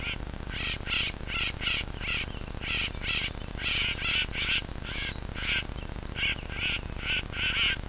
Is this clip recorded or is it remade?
recorded